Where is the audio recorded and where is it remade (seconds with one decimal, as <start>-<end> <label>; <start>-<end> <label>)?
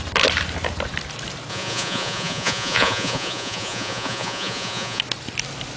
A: 0.0-1.5 recorded; 1.5-5.0 remade; 5.0-5.8 recorded